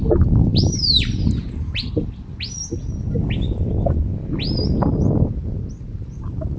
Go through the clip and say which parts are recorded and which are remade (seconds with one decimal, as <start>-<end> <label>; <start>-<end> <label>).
0.0-0.5 recorded; 0.5-1.9 remade; 1.9-5.4 recorded; 5.4-6.6 remade